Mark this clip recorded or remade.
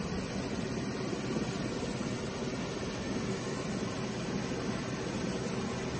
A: recorded